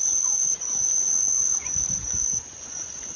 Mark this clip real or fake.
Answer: fake